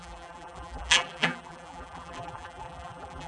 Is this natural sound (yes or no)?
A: no